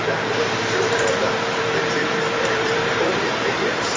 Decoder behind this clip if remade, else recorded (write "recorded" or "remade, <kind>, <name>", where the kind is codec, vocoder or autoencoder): remade, vocoder, BigVGAN v2